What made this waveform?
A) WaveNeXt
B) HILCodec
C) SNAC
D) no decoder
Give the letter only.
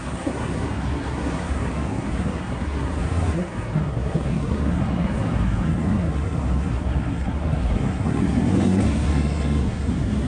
C